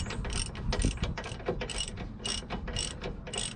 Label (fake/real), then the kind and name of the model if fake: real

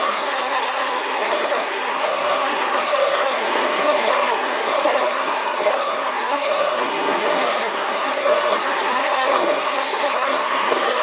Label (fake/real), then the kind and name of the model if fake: fake, codec, SNAC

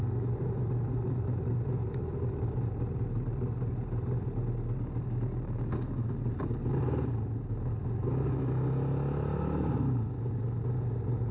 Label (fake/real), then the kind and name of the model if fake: real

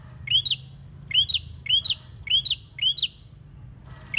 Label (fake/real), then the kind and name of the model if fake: real